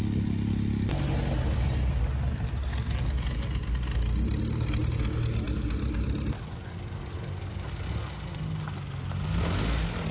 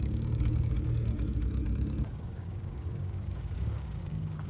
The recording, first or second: first